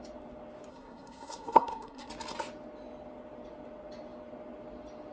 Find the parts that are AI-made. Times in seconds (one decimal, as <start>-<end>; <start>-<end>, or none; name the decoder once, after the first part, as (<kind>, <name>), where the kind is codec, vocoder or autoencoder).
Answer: 0.7-2.1 (codec, SNAC)